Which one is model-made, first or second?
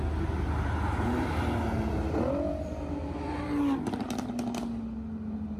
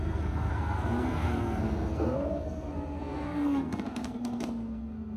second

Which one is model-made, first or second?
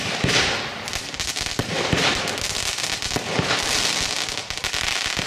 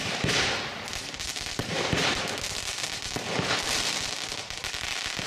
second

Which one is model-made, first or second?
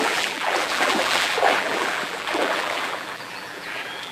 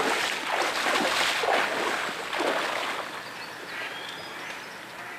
first